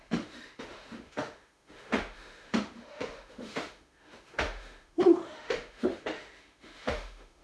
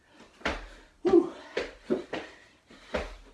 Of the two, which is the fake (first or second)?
first